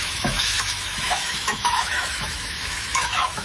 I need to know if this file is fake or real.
fake